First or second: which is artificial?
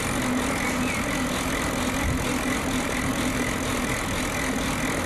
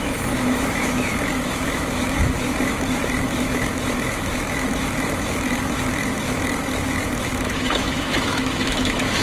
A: second